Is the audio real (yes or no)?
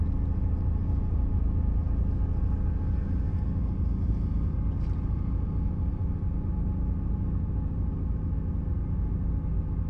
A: yes